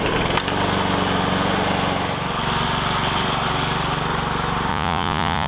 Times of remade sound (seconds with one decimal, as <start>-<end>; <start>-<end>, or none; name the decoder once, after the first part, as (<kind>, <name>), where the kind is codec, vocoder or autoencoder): 4.7-5.5 (vocoder, Vocos)